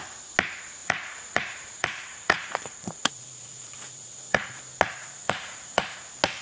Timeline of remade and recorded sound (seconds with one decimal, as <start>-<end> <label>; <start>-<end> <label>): 0.0-0.8 recorded; 0.8-4.6 remade; 4.6-5.0 recorded; 5.0-6.0 remade; 6.0-6.4 recorded